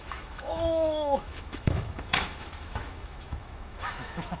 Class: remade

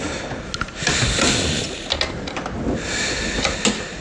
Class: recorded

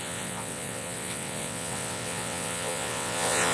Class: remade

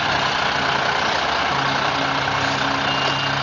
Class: recorded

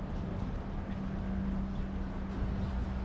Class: recorded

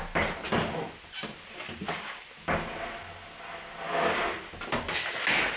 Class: recorded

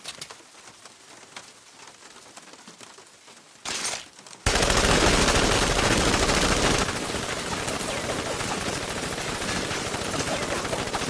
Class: recorded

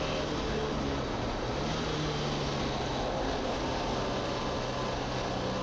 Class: recorded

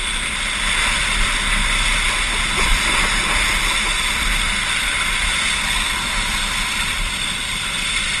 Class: recorded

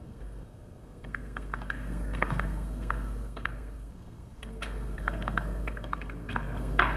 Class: remade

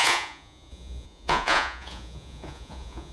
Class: remade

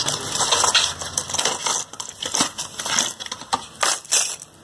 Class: recorded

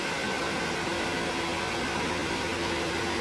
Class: recorded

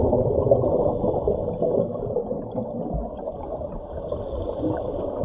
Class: recorded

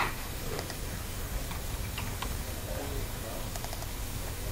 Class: remade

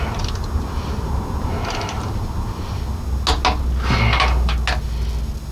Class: recorded